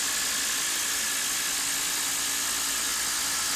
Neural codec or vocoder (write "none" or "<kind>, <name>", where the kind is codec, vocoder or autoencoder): none